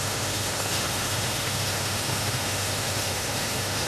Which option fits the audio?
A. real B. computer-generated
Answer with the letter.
B